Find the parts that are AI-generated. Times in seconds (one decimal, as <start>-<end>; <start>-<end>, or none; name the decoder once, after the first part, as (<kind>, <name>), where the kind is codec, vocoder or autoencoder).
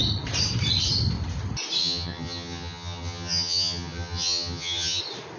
1.8-5.0 (vocoder, HiFi-GAN)